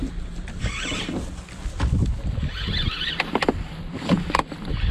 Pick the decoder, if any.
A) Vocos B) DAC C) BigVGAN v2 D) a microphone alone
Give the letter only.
D